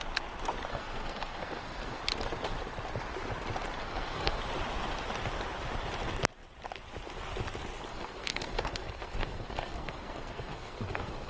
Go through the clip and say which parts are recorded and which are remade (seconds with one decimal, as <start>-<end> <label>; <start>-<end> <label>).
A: 0.0-0.7 recorded; 0.7-2.0 remade; 2.0-3.8 recorded; 3.8-4.4 remade; 4.4-7.9 recorded; 7.9-11.3 remade